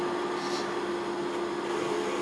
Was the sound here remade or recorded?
recorded